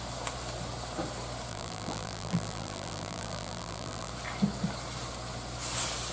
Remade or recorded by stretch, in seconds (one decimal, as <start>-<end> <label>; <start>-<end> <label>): 0.0-1.5 recorded; 1.5-4.1 remade; 4.1-6.1 recorded